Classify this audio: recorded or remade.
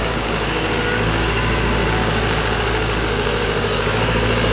remade